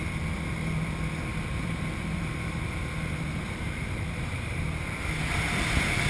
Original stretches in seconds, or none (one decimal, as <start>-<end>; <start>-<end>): 0.0-1.3; 4.6-6.1